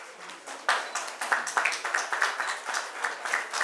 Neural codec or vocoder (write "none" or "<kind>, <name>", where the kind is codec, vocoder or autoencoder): none